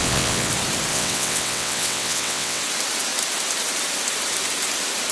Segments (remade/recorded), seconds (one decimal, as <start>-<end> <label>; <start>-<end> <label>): 0.0-0.5 remade; 0.5-0.9 recorded; 0.9-2.6 remade; 2.6-5.1 recorded